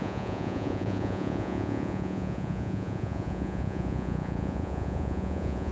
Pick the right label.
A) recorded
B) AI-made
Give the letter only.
B